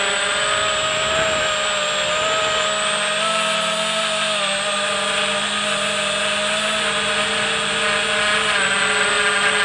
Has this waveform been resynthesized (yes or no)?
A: no